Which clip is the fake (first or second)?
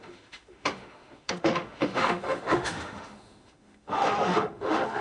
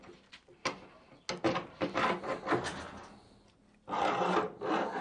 first